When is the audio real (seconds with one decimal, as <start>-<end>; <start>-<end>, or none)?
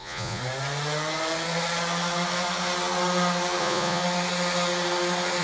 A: 0.4-3.6; 4.0-5.4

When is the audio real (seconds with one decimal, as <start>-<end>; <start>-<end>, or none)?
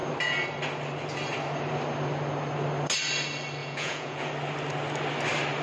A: 0.0-3.6; 4.3-5.6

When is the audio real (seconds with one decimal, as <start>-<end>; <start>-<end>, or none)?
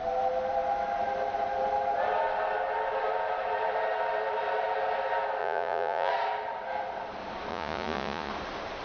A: 0.0-5.4; 6.1-7.5; 8.3-8.8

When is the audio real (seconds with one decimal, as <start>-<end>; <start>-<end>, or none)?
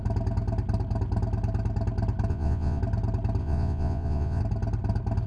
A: 0.0-2.3; 2.8-3.4; 4.4-5.3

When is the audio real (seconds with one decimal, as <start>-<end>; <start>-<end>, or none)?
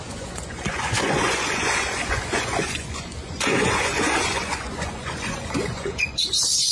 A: none